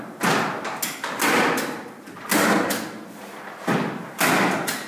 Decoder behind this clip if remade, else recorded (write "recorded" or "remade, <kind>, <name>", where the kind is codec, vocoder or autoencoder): recorded